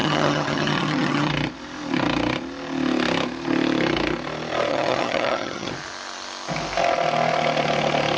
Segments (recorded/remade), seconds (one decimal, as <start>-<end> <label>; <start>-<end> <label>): 0.0-1.3 remade; 1.3-4.7 recorded; 4.7-5.7 remade; 5.7-8.2 recorded